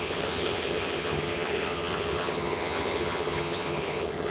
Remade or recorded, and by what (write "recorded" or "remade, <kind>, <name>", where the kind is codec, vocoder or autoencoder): remade, vocoder, HiFi-GAN